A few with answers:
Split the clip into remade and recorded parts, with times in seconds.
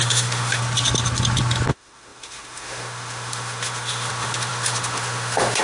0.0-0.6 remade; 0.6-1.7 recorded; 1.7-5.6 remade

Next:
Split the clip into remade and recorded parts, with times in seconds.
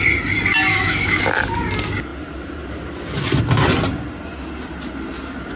0.0-0.7 recorded; 0.7-1.2 remade; 1.2-5.6 recorded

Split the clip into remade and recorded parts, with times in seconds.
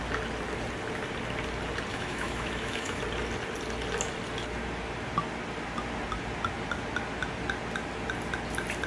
0.0-1.9 recorded; 1.9-3.0 remade; 3.0-8.9 recorded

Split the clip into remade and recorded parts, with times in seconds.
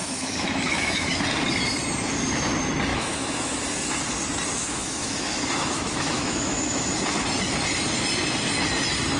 0.0-1.2 remade; 1.2-2.9 recorded; 2.9-3.6 remade; 3.6-4.5 recorded; 4.5-6.9 remade; 6.9-9.2 recorded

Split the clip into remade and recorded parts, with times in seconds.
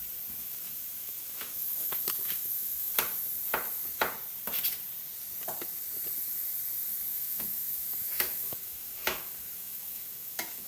0.0-0.4 recorded; 0.4-2.9 remade; 2.9-7.1 recorded; 7.1-10.7 remade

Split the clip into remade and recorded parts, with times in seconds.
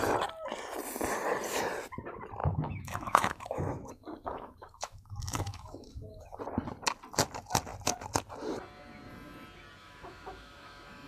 0.0-2.4 recorded; 2.4-6.4 remade; 6.4-9.8 recorded; 9.8-11.1 remade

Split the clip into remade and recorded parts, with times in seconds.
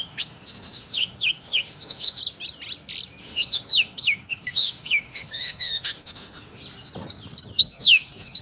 0.0-2.2 remade; 2.2-3.2 recorded; 3.2-6.6 remade; 6.6-7.6 recorded; 7.6-8.4 remade